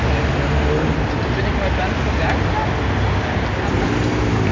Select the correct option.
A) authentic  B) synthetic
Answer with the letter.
A